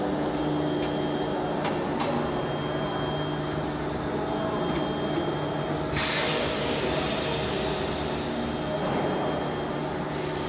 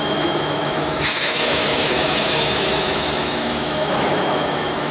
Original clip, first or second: first